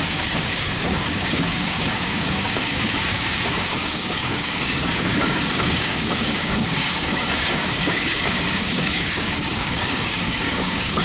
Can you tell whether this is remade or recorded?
remade